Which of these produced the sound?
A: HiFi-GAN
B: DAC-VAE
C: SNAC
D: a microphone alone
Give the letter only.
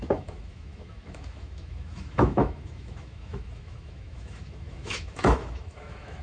B